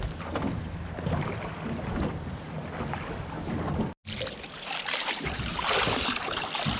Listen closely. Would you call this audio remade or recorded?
recorded